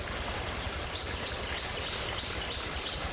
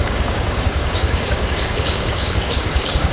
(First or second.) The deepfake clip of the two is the second